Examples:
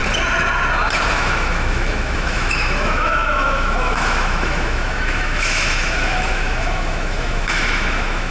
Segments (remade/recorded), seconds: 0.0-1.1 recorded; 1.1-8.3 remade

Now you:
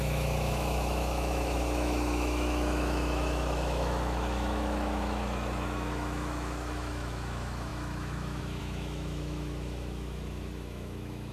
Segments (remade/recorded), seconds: 0.0-11.3 remade

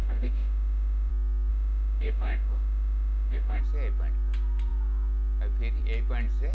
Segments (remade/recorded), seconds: 0.0-1.1 remade; 1.1-1.5 recorded; 1.5-3.6 remade; 3.6-6.5 recorded

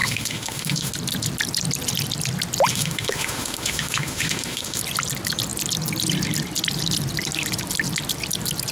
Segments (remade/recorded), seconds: 0.0-0.9 remade; 0.9-2.7 recorded; 2.7-4.8 remade; 4.8-8.7 recorded

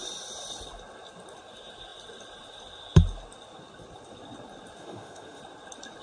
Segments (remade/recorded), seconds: 0.0-4.8 recorded; 4.8-5.4 remade; 5.4-6.0 recorded

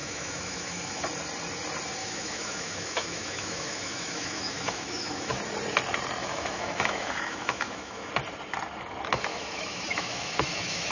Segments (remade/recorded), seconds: 0.0-1.0 remade; 1.0-2.0 recorded; 2.0-5.4 remade; 5.4-6.2 recorded; 6.2-8.1 remade; 8.1-9.3 recorded; 9.3-10.9 remade